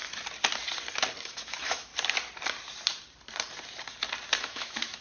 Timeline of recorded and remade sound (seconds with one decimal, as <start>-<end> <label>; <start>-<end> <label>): 0.0-1.2 recorded; 1.2-1.9 remade; 1.9-4.4 recorded; 4.4-5.0 remade